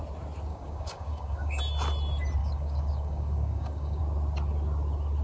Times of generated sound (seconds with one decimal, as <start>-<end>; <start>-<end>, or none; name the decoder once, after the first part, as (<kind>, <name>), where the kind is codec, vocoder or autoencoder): 0.5-1.6 (codec, DAC); 2.4-4.0